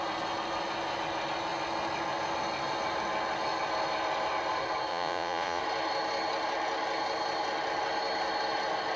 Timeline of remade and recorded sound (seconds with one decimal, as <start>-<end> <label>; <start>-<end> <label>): 0.0-4.9 recorded; 4.9-5.6 remade; 5.6-9.0 recorded